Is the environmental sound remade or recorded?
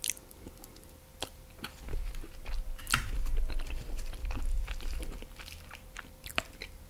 recorded